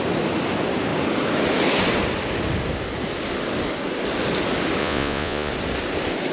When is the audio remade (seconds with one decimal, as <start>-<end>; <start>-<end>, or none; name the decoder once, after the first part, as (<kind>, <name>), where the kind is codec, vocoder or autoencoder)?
4.8-5.5 (vocoder, Vocos)